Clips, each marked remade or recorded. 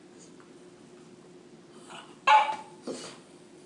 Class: recorded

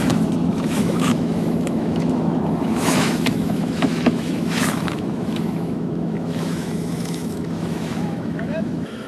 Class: remade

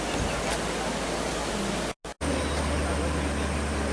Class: recorded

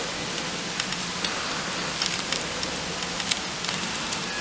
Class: recorded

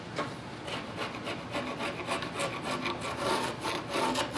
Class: recorded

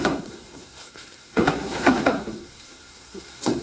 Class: remade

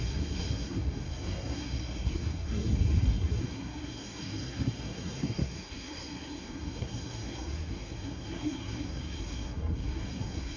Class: remade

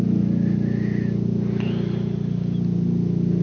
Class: recorded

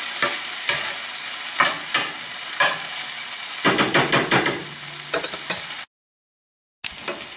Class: recorded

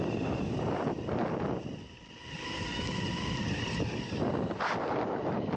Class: recorded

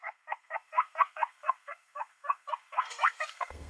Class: remade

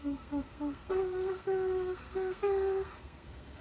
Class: remade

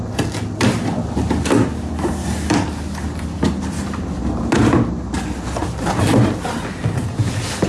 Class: recorded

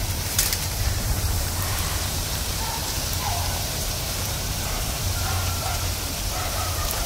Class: remade